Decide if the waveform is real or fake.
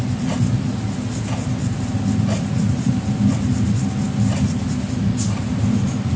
real